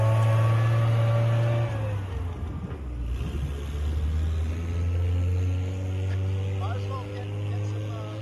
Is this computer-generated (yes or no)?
no